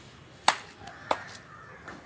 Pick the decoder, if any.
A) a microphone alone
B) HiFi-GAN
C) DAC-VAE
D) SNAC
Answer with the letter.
A